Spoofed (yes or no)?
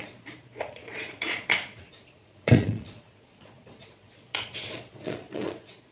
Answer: yes